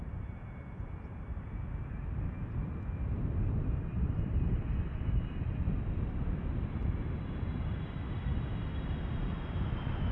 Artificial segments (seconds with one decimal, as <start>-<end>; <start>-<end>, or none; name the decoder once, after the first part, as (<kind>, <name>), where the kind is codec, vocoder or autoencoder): 2.6-6.8 (vocoder, BigVGAN v2)